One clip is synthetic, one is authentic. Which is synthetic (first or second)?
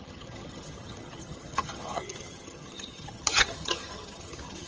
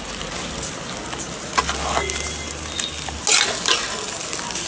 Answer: first